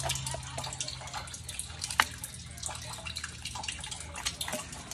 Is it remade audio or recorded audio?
recorded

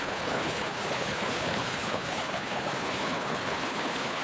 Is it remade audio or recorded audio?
remade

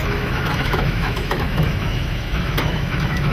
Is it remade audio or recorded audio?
remade